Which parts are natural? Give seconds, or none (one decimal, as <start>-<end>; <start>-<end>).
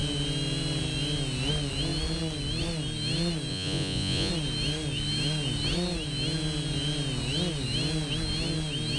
0.0-3.5; 4.3-9.0